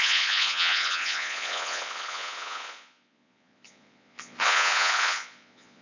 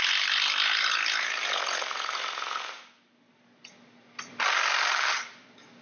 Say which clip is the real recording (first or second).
second